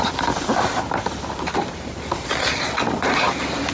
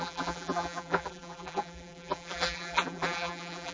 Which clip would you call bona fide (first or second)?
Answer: first